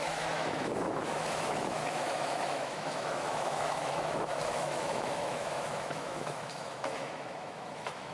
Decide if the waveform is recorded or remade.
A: remade